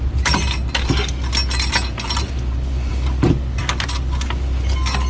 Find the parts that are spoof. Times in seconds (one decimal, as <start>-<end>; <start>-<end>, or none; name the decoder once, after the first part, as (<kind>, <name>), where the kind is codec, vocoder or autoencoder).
none